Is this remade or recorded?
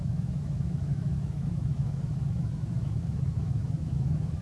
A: remade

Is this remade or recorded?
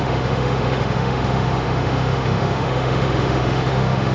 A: remade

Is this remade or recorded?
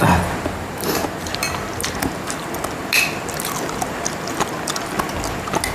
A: recorded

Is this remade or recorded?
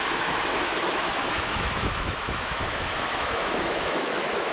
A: remade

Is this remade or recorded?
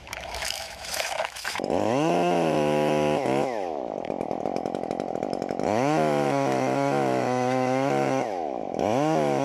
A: remade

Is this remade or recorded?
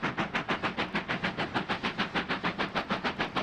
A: recorded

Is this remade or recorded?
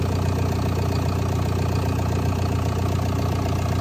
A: recorded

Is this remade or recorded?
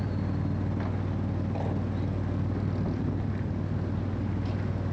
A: recorded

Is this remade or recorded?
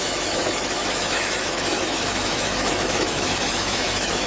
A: remade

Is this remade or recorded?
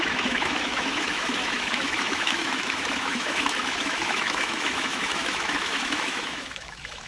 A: remade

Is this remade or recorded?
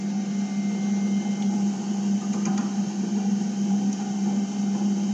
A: recorded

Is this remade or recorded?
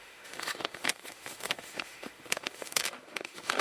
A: remade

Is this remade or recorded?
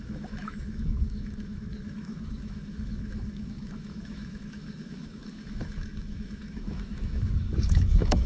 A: remade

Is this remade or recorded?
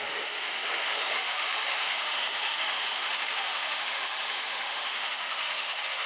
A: remade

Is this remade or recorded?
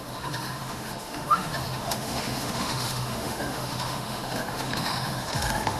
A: remade